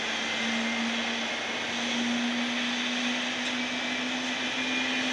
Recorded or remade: recorded